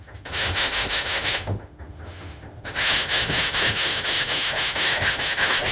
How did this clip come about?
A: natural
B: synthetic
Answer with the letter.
B